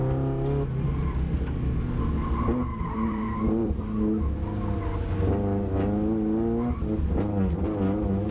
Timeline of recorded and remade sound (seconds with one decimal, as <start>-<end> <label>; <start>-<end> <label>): 0.0-2.7 recorded; 2.7-3.8 remade; 3.8-8.3 recorded